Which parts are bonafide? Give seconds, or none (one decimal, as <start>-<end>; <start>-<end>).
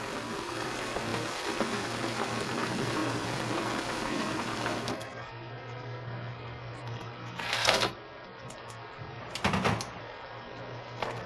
9.2-10.0